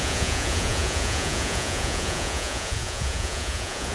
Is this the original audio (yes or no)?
no